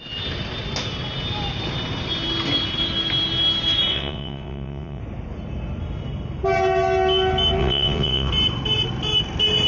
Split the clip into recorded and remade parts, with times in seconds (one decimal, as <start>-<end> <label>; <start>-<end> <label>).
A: 0.0-3.9 recorded; 3.9-5.0 remade; 5.0-7.6 recorded; 7.6-8.3 remade; 8.3-9.7 recorded